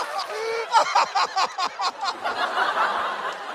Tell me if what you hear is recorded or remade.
recorded